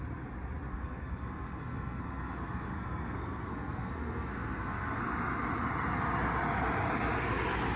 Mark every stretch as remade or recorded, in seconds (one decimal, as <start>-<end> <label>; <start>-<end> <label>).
0.0-0.7 recorded; 0.7-5.0 remade; 5.0-7.8 recorded